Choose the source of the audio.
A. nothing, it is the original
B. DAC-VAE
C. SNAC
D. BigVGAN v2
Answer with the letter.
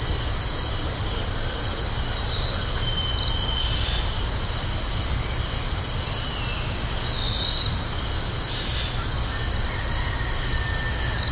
A